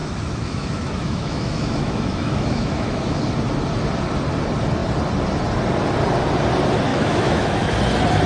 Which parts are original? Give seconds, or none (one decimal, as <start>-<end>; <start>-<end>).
3.2-6.9; 7.7-8.3